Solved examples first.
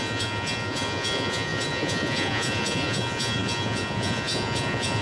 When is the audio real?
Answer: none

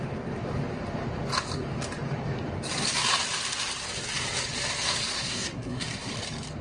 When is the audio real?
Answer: 0.0-5.1; 6.1-6.6

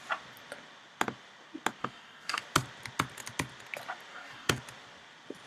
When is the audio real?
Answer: 0.0-1.8; 2.4-4.1; 4.6-5.5